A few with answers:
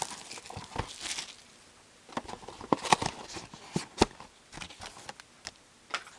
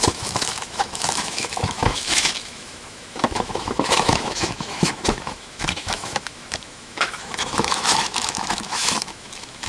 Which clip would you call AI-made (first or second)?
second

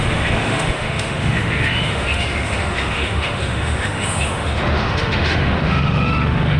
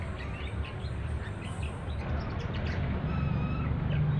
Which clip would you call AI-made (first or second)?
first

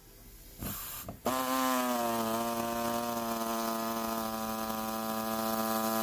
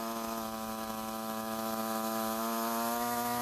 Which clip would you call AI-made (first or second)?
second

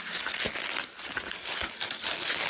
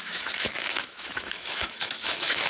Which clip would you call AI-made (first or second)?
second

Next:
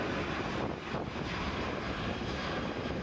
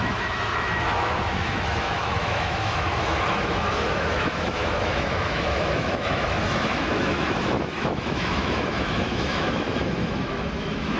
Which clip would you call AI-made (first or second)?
second